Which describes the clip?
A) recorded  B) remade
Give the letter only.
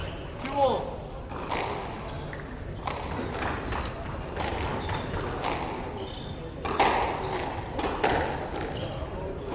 A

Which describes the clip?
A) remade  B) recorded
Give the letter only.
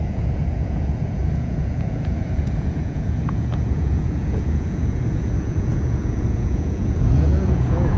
A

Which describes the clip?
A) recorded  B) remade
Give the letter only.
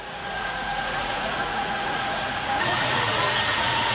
B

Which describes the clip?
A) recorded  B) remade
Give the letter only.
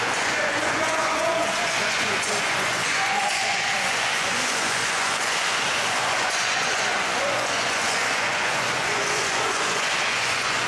B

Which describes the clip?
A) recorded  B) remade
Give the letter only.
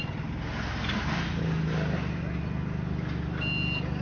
A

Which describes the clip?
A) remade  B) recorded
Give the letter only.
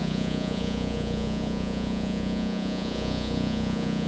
A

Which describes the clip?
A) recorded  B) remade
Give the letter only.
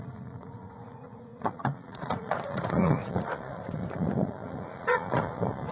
B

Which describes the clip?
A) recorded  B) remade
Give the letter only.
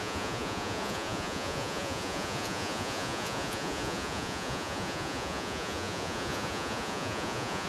B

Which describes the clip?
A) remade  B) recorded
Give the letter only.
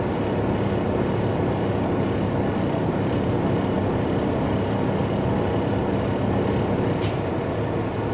B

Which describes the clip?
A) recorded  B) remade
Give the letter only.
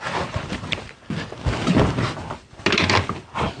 A